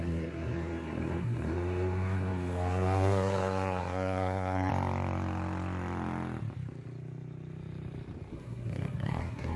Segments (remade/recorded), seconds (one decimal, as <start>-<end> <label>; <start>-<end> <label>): 0.0-4.7 remade; 4.7-8.3 recorded; 8.3-9.6 remade